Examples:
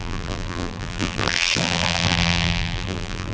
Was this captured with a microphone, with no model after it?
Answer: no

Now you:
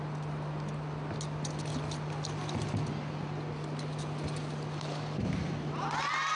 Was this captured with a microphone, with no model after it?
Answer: yes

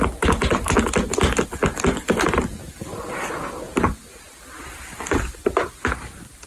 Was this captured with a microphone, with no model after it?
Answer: yes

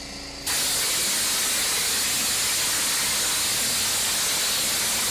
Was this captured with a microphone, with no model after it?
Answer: yes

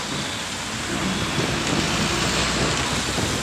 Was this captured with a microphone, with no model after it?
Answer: yes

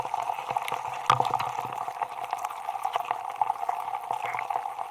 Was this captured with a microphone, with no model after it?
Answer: yes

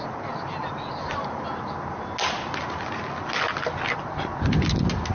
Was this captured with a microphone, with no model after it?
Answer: yes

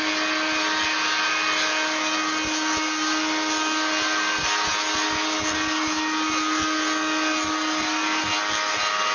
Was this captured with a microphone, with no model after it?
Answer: yes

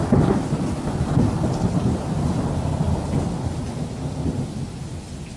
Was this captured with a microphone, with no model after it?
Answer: yes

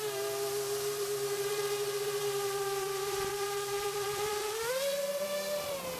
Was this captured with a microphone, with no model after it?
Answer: no